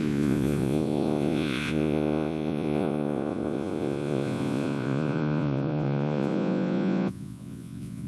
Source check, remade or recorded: remade